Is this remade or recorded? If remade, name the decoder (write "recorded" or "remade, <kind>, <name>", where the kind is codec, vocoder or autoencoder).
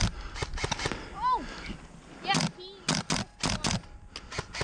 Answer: recorded